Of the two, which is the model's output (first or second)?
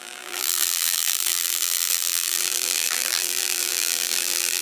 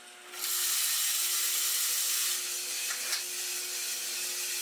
first